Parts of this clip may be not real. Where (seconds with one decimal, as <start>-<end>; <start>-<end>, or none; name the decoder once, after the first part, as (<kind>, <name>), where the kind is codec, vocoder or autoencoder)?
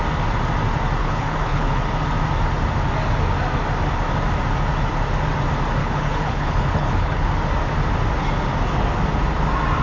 1.0-1.8 (codec, HILCodec); 5.8-7.3